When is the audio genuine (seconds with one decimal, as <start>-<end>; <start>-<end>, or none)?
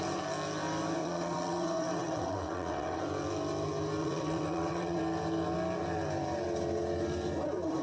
0.0-1.0; 3.0-4.0; 5.0-7.8